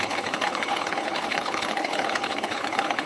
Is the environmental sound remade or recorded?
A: remade